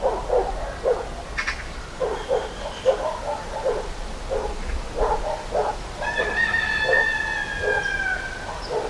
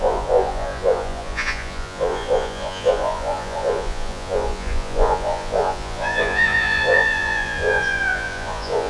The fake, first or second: second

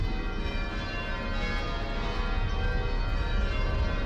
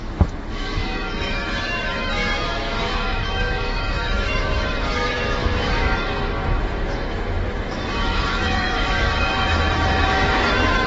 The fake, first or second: second